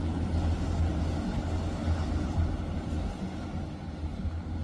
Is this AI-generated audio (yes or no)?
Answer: no